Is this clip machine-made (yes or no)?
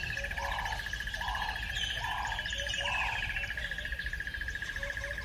no